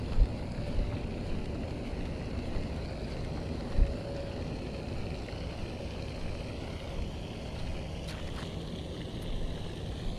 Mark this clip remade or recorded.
recorded